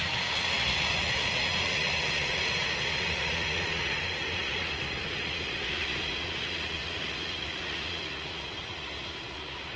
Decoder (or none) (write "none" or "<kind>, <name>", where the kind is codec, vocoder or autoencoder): vocoder, Vocos